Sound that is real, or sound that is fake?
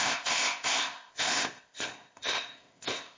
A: fake